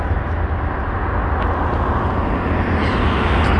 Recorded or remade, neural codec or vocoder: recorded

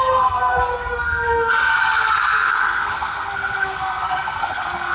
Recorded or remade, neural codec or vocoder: remade, codec, SNAC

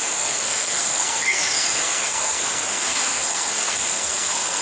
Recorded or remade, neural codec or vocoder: remade, codec, SNAC